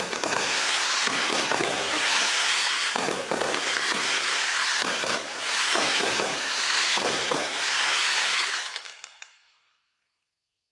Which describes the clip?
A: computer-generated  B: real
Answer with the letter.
A